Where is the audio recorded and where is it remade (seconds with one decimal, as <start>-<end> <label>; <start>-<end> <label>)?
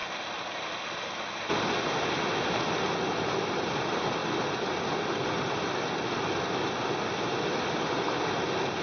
0.0-8.8 recorded